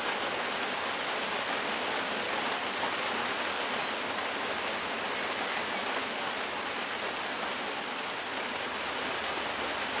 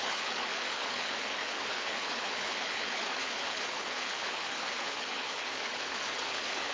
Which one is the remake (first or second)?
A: second